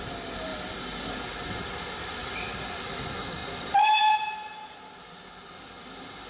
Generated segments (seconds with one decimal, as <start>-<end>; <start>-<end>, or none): none